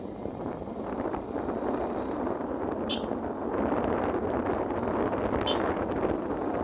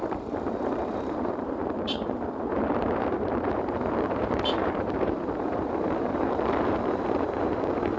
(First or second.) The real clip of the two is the first